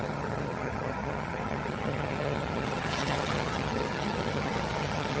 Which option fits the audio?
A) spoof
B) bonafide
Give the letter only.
A